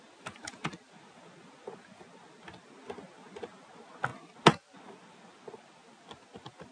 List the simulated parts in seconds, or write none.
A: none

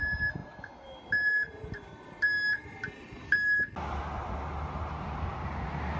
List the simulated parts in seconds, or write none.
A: none

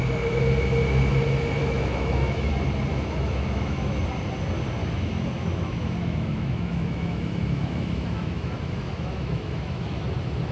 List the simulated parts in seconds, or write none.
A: 1.6-2.5 (autoencoder, DAC-VAE); 2.9-4.0; 4.8-10.0

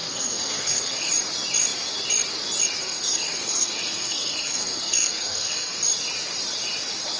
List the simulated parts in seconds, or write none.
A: 0.0-1.1 (codec, SNAC); 2.8-5.8